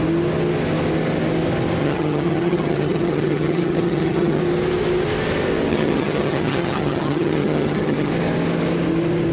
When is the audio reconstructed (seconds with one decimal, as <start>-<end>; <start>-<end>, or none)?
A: 1.8-4.4; 5.7-8.1